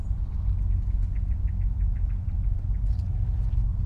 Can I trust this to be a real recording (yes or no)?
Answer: yes